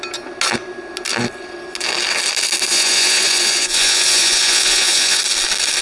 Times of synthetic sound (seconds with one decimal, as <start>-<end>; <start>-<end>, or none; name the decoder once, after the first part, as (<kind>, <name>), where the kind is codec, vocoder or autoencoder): 2.7-5.2 (vocoder, Vocos)